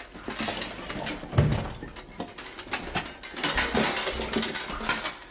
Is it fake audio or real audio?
real